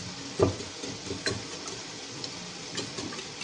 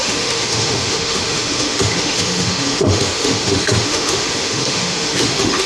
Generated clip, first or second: second